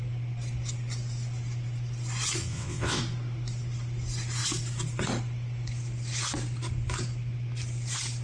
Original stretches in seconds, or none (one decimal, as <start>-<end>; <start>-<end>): 0.0-2.4; 3.0-8.2